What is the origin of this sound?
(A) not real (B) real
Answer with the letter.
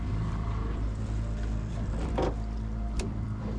A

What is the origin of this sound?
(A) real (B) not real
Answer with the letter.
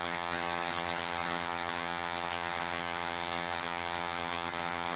B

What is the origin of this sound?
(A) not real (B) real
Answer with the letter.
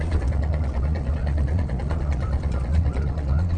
A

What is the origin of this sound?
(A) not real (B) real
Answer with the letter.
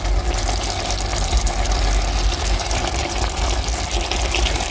B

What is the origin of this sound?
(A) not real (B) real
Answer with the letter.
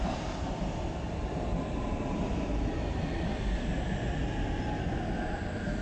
B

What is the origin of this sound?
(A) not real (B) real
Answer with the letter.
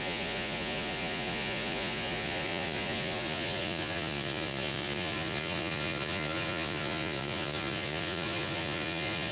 A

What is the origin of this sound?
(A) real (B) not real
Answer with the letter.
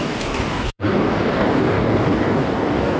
B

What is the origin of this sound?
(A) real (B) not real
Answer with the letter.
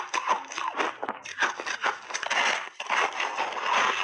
A